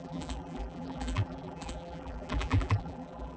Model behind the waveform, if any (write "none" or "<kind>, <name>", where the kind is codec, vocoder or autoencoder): vocoder, BigVGAN v2